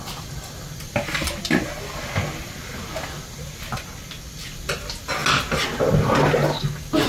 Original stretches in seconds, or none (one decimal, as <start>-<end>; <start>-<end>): 0.0-7.1